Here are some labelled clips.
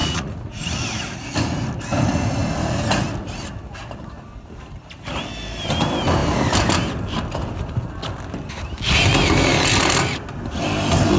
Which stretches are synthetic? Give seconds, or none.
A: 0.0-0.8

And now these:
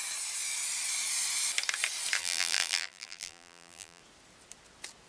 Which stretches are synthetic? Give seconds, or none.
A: 2.2-4.0

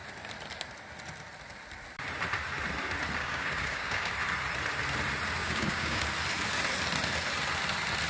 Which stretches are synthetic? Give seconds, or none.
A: 3.2-4.1; 5.4-6.0

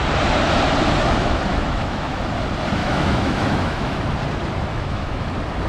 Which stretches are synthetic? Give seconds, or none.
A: 1.5-2.2; 2.8-4.0; 4.7-5.3

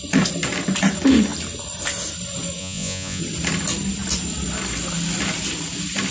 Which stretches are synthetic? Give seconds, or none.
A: 2.6-3.2